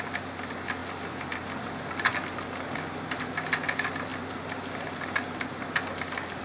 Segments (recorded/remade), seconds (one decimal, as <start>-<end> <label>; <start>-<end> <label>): 0.0-6.4 recorded